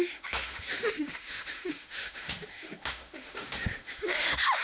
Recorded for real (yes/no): no